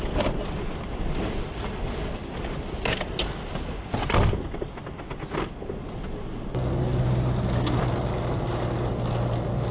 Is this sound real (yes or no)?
yes